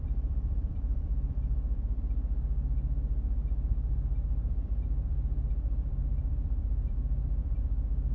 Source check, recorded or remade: remade